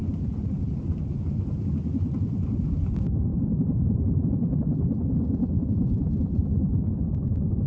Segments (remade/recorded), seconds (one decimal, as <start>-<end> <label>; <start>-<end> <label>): 0.0-7.7 recorded